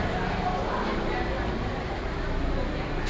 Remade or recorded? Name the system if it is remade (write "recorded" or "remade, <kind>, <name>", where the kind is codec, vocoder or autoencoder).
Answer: recorded